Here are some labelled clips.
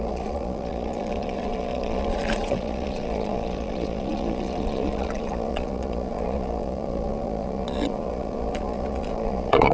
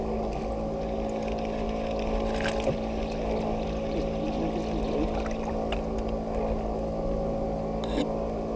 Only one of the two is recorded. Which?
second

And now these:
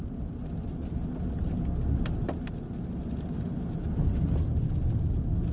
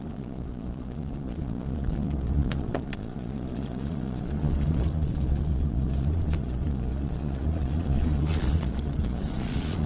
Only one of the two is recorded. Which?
first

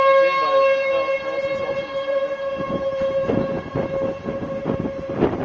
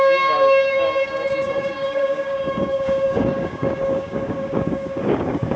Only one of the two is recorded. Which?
first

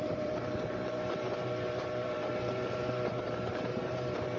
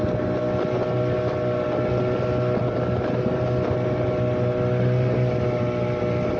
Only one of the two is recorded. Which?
second